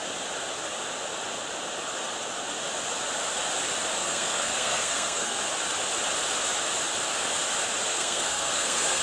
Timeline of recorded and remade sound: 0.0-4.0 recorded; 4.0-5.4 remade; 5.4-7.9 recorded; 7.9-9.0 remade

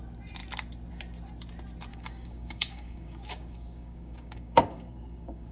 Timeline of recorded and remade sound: 0.0-1.9 recorded; 1.9-5.5 remade